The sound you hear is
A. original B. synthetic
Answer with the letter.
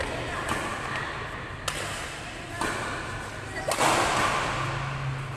A